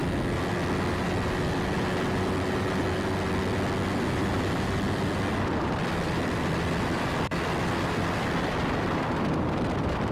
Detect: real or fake real